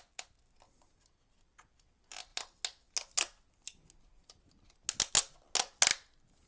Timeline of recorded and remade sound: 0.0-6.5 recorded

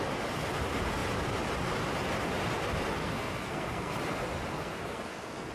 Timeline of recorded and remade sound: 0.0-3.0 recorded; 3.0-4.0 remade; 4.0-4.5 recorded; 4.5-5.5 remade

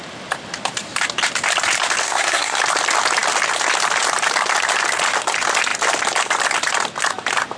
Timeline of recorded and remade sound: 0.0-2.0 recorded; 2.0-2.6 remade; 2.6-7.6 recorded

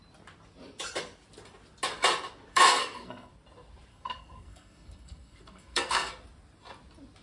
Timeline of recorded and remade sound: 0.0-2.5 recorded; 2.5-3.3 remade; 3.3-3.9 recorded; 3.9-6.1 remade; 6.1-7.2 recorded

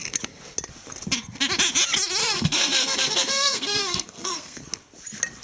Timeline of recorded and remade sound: 0.0-2.2 recorded; 2.2-4.6 remade; 4.6-5.4 recorded

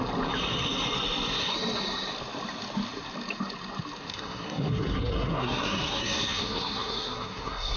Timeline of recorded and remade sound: 0.0-4.1 recorded; 4.1-7.8 remade